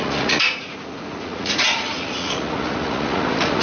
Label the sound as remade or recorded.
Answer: remade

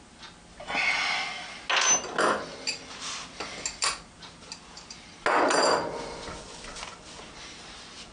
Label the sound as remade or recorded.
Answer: recorded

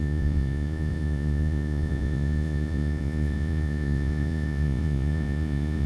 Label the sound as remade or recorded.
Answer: remade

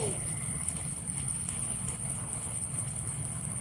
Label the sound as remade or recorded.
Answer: remade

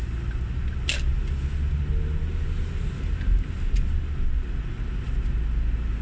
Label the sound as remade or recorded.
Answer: recorded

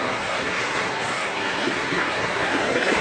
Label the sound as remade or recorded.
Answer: remade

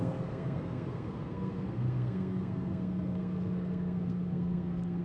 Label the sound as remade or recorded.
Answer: remade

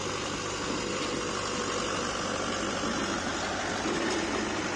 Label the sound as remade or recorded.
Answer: recorded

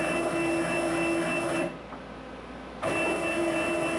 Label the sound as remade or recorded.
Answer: recorded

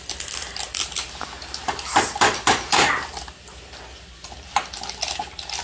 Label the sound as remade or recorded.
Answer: recorded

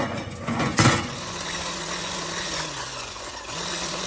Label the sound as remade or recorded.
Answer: remade